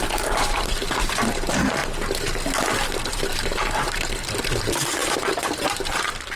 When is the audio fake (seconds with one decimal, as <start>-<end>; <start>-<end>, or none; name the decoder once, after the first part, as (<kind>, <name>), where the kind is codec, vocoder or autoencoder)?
0.0-1.8 (vocoder, BigVGAN v2); 3.1-6.4